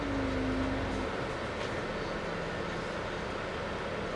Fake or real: real